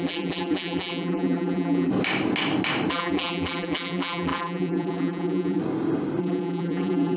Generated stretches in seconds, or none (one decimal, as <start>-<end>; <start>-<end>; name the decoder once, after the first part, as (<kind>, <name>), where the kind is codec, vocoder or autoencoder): 0.0-1.9 (vocoder, BigVGAN v2); 2.9-5.6; 6.2-7.2